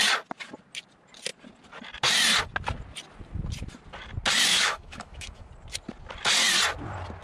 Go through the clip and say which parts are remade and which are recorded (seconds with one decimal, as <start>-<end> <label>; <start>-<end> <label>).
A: 0.0-4.5 recorded; 4.5-5.5 remade; 5.5-7.2 recorded